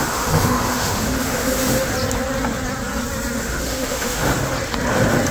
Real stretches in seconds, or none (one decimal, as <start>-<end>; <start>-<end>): 1.9-3.4; 4.2-5.3